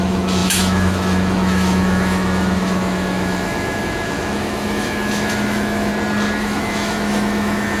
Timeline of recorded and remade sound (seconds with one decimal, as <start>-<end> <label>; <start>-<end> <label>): 0.0-5.9 remade; 5.9-6.4 recorded; 6.4-7.8 remade